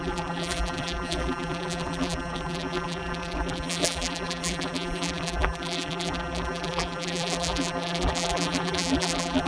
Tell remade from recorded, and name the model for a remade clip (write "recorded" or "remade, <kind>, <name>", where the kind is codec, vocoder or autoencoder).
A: remade, vocoder, BigVGAN v2